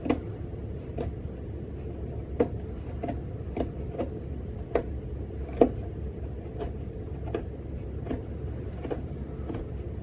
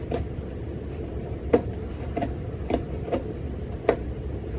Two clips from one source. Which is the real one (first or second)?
first